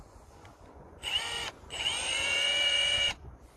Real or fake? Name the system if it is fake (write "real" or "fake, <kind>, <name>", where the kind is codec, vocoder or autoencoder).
fake, vocoder, Vocos